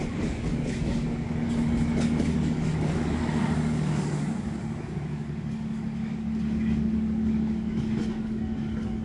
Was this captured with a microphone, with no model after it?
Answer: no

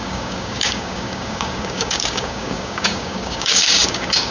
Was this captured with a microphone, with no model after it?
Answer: no